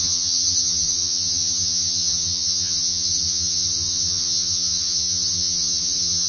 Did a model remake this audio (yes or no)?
yes